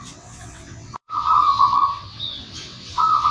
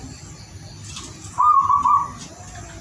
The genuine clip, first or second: second